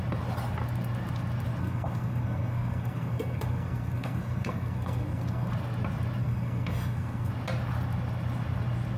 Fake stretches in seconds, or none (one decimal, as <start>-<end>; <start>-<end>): 1.6-5.5; 6.2-7.3